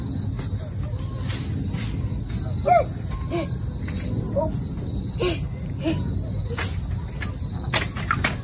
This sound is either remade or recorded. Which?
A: recorded